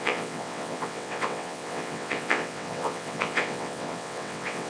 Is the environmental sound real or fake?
fake